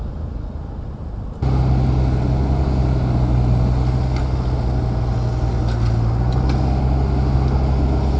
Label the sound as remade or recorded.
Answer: recorded